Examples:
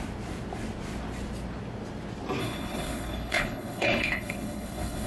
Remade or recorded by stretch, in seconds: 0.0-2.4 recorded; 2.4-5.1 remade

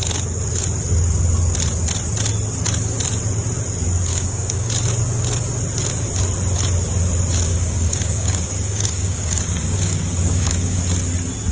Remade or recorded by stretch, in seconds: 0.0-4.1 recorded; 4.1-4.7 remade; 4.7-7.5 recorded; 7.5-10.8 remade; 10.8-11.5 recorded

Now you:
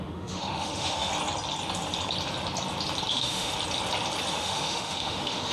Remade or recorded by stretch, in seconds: 0.0-1.1 remade; 1.1-3.1 recorded; 3.1-3.5 remade; 3.5-4.3 recorded; 4.3-5.5 remade